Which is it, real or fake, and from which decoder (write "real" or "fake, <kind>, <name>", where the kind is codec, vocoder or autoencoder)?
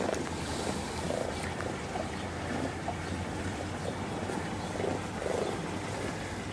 real